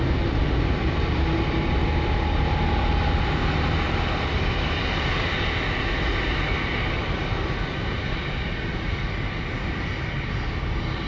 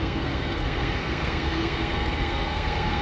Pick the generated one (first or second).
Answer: second